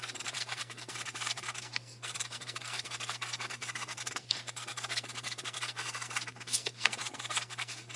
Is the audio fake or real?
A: fake